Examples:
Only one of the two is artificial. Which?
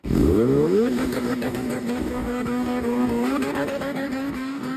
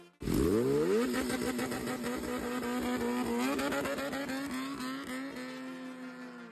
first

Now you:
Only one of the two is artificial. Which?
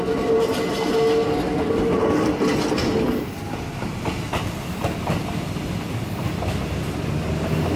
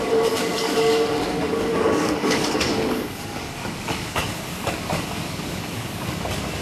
second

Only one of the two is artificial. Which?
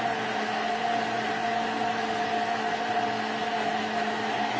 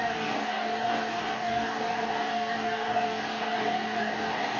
second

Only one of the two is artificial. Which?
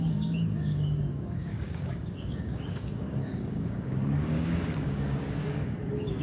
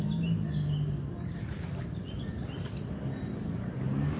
first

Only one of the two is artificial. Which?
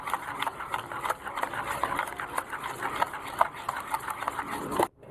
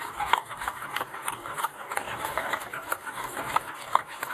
second